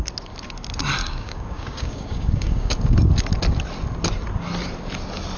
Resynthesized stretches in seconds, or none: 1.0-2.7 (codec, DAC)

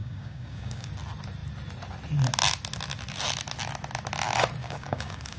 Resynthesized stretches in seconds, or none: 0.0-0.9 (codec, DAC); 4.6-5.4

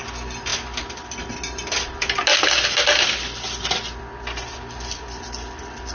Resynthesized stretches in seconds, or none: none

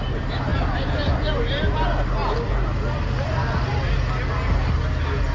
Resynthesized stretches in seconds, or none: none